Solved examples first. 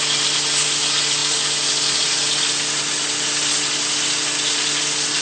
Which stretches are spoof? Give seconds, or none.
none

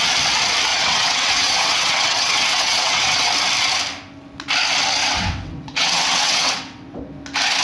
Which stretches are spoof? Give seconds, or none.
0.7-3.3 (vocoder, WaveNeXt); 5.0-7.0

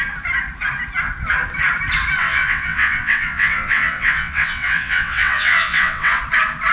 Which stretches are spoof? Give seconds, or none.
2.2-6.2 (vocoder, WaveNeXt)

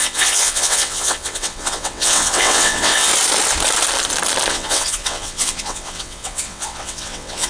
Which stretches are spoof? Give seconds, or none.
0.0-3.1 (vocoder, WaveNeXt); 4.5-7.5

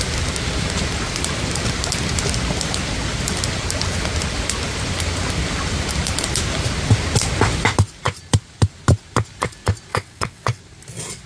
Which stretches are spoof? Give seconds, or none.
9.9-10.6 (vocoder, WaveNeXt)

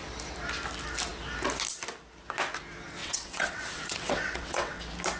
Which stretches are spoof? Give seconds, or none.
3.0-4.8 (vocoder, WaveNeXt)

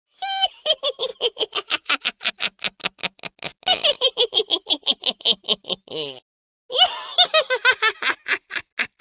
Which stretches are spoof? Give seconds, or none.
none

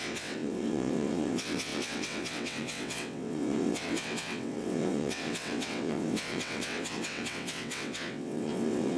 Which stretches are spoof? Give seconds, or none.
0.0-9.0 (vocoder, WaveNeXt)